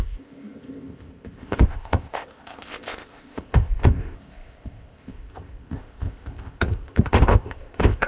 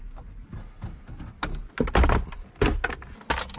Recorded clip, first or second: second